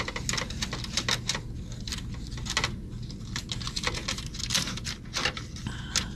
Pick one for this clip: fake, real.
real